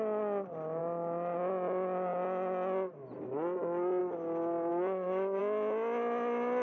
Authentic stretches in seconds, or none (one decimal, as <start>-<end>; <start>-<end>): 0.0-4.7; 5.4-6.6